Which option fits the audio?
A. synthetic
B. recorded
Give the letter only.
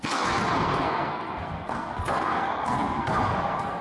A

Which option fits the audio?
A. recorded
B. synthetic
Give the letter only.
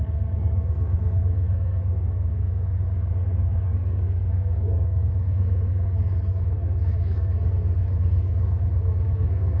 B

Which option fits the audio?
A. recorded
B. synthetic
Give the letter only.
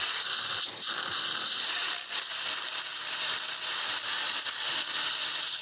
A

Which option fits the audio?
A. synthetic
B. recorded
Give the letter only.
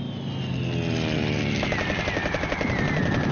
B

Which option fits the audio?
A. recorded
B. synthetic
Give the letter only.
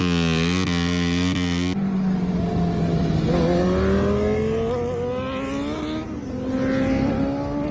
A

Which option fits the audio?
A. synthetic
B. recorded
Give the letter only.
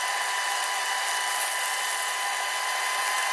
B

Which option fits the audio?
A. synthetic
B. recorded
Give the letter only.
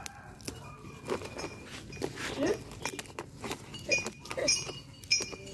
B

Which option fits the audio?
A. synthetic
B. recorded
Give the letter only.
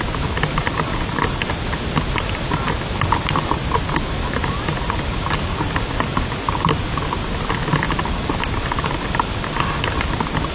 B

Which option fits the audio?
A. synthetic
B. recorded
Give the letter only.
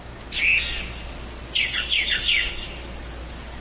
B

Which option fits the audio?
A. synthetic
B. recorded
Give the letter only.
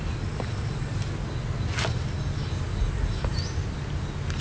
B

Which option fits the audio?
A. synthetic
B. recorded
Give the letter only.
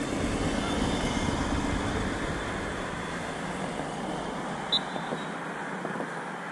B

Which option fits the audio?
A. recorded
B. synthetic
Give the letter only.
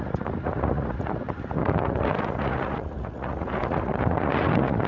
B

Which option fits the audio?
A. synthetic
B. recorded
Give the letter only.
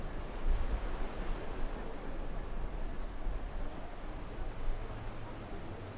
B